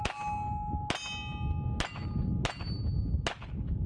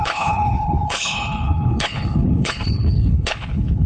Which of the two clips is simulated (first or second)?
second